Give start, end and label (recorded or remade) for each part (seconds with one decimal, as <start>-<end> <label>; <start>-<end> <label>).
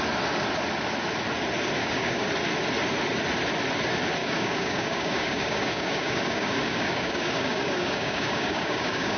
0.0-1.8 recorded; 1.8-2.3 remade; 2.3-4.2 recorded; 4.2-9.2 remade